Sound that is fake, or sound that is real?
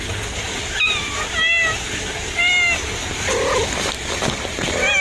real